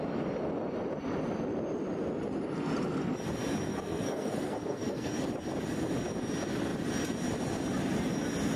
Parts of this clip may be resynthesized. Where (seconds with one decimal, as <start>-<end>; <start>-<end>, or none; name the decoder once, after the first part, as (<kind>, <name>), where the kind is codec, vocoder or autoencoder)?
3.7-5.1 (codec, SNAC)